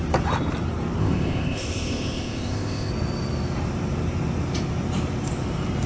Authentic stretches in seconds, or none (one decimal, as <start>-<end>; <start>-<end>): 0.0-1.0; 2.9-5.9